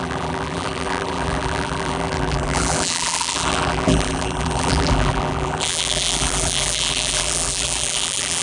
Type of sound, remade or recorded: remade